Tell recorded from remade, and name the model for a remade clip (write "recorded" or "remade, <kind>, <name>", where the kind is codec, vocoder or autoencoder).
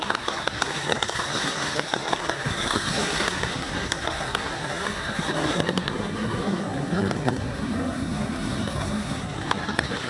remade, codec, SNAC